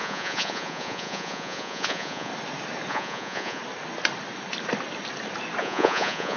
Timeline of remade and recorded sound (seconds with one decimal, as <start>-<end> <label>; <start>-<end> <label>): 0.0-2.3 remade; 2.3-2.9 recorded; 2.9-3.6 remade; 3.6-5.6 recorded; 5.6-6.4 remade